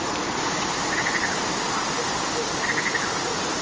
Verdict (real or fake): fake